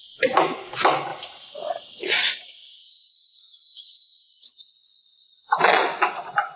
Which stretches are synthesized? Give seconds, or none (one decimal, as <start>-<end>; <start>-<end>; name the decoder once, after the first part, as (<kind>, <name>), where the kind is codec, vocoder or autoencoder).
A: 2.8-4.5 (autoencoder, DAC-VAE)